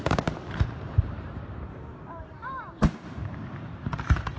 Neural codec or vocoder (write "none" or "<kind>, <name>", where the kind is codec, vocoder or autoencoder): vocoder, BigVGAN v2